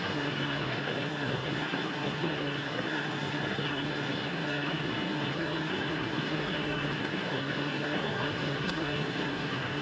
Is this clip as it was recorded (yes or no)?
no